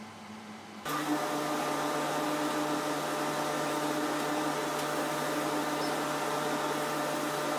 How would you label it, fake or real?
real